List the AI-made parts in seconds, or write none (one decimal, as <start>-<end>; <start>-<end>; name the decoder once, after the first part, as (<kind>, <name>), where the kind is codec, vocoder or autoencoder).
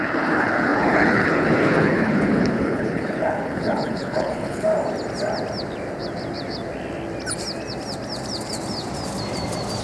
0.0-4.7 (codec, HILCodec)